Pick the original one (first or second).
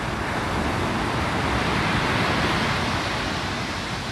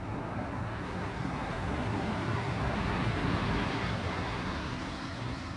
first